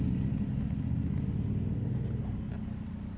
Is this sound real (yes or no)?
yes